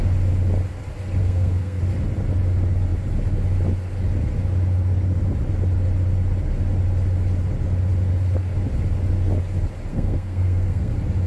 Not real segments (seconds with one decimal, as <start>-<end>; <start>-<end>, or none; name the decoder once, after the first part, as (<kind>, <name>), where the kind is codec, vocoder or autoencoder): 1.2-1.8 (codec, SNAC); 9.9-10.9